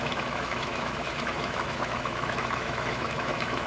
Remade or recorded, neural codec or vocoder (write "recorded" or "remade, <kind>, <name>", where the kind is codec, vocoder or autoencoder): remade, autoencoder, DAC-VAE